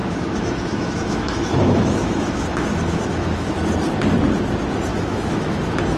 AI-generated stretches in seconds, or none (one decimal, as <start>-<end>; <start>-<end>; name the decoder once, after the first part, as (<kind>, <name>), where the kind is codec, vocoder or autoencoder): 0.0-3.6 (autoencoder, DAC-VAE); 4.9-5.6